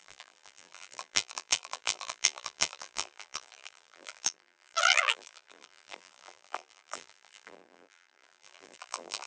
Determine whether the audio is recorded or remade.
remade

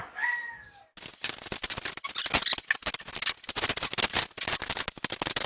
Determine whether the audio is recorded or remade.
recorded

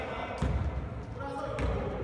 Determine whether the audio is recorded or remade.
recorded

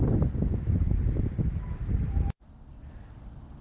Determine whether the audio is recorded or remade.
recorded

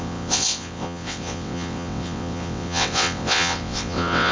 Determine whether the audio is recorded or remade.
remade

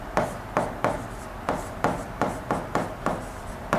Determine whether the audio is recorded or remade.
remade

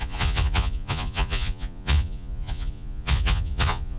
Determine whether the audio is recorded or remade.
remade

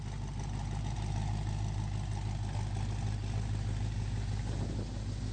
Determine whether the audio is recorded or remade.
recorded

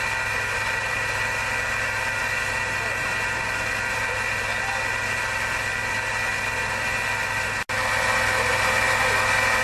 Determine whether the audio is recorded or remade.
recorded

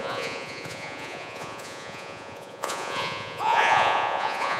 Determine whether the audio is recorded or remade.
remade